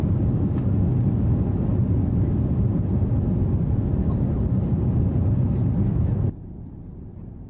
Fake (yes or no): no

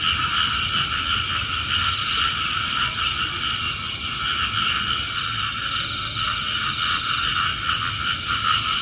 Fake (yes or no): no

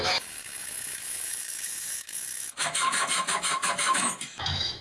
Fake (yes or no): yes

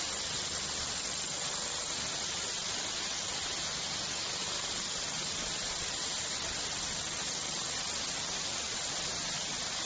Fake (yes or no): no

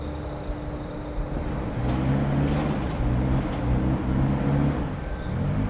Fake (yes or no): no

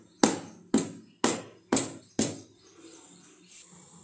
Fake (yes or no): no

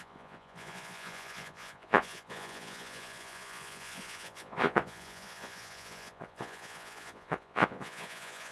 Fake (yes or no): yes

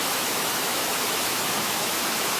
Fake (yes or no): yes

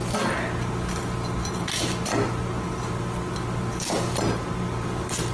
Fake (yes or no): no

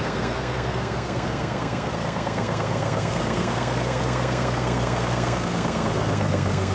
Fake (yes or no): yes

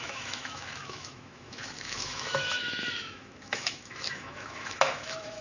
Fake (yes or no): yes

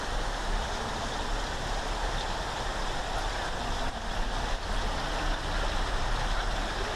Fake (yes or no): no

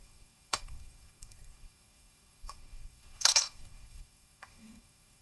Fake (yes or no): yes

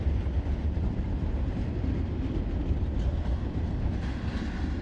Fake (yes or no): no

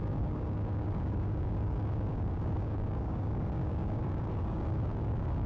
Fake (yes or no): yes